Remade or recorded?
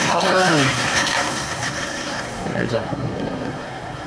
remade